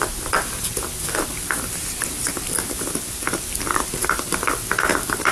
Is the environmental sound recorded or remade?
recorded